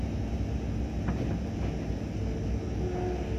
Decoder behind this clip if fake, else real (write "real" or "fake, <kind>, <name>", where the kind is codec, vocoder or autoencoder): real